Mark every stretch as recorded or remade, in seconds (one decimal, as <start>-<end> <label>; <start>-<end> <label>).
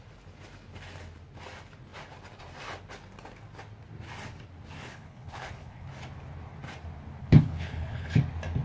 0.0-4.9 recorded; 4.9-5.9 remade; 5.9-7.2 recorded; 7.2-8.2 remade; 8.2-8.6 recorded